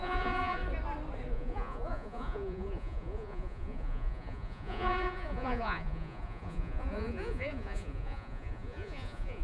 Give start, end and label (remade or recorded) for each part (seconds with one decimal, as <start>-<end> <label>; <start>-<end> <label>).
0.0-0.6 remade; 0.6-1.3 recorded; 1.3-9.4 remade